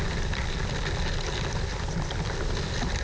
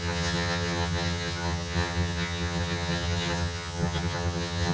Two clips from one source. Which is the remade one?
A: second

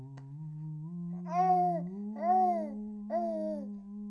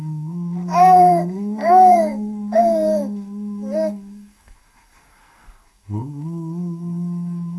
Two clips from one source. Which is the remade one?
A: second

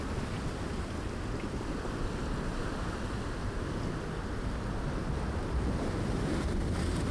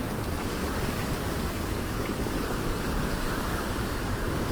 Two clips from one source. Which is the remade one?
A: second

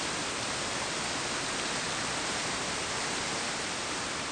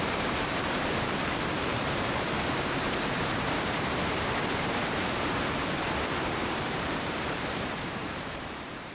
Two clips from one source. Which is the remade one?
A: second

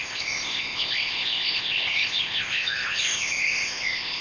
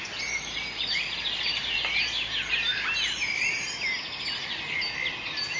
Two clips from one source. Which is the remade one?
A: first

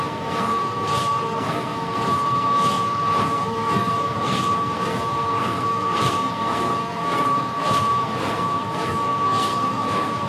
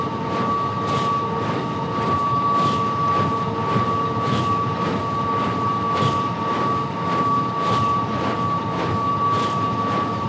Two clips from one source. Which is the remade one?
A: first